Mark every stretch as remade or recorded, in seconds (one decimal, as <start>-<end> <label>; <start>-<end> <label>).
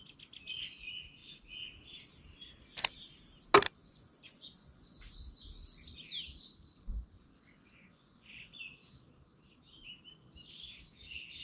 0.0-3.8 recorded; 3.8-5.0 remade; 5.0-7.6 recorded; 7.6-8.6 remade; 8.6-11.4 recorded